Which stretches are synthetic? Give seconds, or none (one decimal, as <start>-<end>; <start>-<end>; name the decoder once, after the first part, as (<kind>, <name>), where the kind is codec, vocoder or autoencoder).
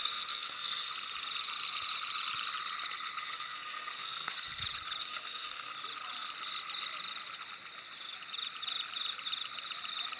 0.0-0.9 (codec, SNAC); 3.2-4.6; 5.0-5.7